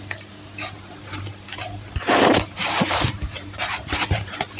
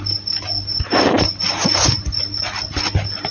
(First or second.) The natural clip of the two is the second